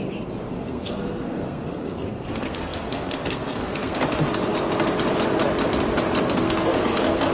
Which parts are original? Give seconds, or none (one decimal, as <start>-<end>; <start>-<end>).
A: 0.0-0.5; 4.0-6.4